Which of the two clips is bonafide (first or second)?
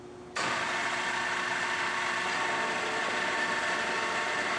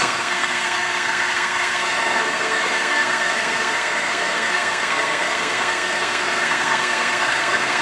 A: first